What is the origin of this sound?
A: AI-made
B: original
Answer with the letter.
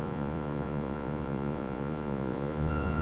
A